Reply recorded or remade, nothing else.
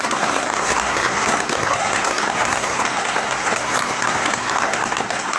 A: remade